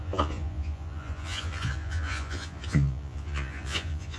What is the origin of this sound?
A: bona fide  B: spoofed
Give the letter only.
B